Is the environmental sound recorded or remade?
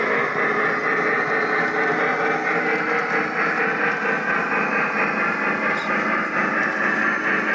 recorded